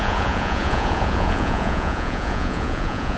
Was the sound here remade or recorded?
remade